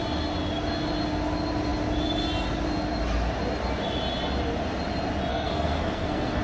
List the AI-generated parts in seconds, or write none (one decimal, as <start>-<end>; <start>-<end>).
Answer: 5.3-6.4